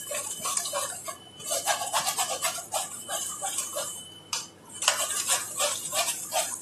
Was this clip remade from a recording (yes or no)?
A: yes